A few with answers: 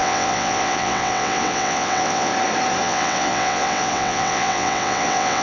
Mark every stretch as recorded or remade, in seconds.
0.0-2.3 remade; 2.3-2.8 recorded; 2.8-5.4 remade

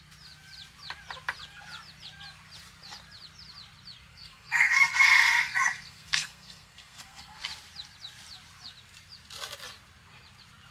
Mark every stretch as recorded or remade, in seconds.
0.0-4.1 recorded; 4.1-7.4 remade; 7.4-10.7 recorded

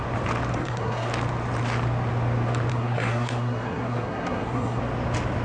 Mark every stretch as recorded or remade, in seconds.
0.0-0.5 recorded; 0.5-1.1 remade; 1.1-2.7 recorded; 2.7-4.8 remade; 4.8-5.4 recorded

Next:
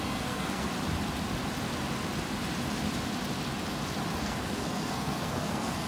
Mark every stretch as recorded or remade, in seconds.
0.0-0.7 remade; 0.7-4.2 recorded; 4.2-5.9 remade

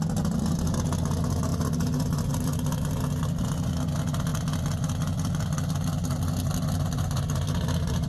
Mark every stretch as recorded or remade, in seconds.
0.0-8.1 recorded